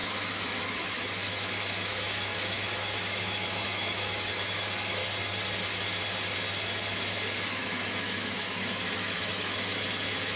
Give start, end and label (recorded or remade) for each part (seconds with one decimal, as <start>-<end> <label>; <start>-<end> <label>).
0.0-5.0 remade; 5.0-7.5 recorded; 7.5-10.4 remade